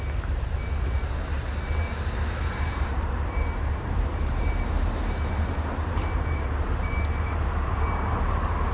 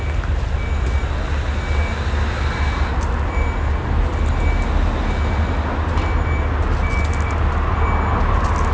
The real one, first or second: second